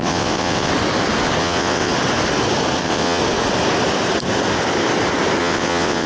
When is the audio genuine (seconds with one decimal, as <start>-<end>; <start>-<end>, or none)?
0.7-1.4; 1.9-2.8; 3.2-5.4